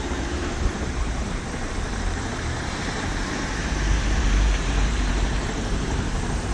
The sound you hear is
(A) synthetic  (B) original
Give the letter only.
A